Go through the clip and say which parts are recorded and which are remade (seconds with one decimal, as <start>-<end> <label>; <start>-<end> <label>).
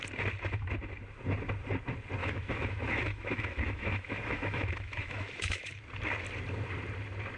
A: 0.0-2.2 recorded; 2.2-5.8 remade; 5.8-7.4 recorded